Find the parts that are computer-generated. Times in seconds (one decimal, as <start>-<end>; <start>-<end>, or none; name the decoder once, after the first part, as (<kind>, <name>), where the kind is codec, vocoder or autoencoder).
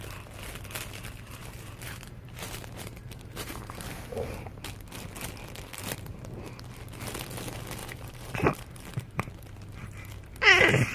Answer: 1.4-3.9 (vocoder, BigVGAN v2); 7.8-9.3; 9.8-10.3